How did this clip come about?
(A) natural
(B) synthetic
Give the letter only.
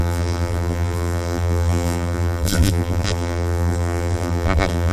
B